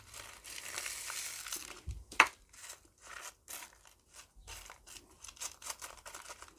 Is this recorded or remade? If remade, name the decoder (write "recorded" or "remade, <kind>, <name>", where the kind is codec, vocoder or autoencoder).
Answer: recorded